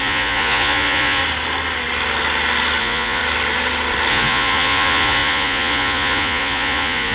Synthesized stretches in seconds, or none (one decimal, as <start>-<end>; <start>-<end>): 0.0-1.2; 2.8-3.2; 4.1-7.1